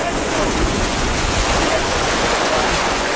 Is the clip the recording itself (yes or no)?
no